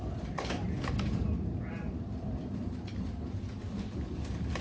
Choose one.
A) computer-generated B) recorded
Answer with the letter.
B